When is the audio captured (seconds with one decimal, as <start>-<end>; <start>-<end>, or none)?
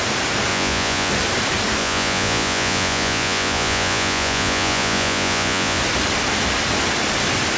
0.0-0.5; 1.1-1.8; 5.8-7.6